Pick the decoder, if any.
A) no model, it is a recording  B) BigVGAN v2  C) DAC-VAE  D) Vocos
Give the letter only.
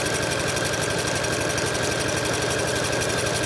A